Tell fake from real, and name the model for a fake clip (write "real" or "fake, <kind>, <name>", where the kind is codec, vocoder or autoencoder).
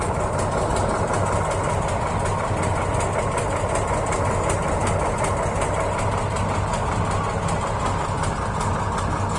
real